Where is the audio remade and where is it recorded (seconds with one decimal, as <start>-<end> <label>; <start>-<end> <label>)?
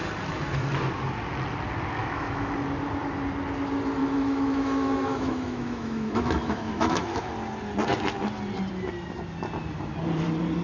0.0-2.0 recorded; 2.0-2.5 remade; 2.5-4.0 recorded; 4.0-7.3 remade; 7.3-10.6 recorded